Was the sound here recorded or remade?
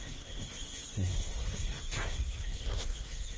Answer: remade